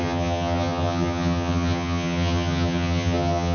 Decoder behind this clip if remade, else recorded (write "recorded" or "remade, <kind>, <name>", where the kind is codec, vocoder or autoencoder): remade, vocoder, HiFi-GAN